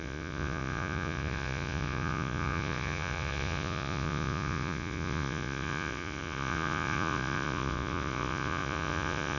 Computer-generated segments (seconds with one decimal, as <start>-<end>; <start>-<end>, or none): 0.0-9.4